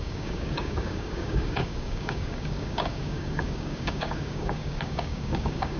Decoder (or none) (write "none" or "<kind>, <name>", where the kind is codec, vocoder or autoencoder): codec, DAC